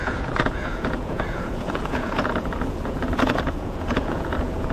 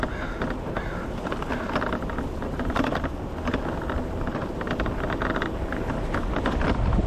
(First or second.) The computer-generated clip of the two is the first